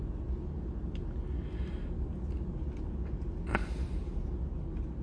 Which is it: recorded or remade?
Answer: recorded